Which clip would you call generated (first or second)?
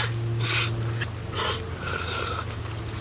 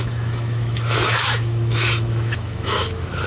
second